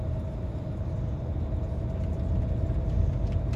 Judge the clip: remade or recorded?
recorded